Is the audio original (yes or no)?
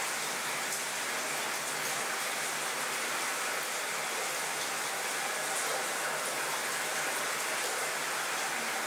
yes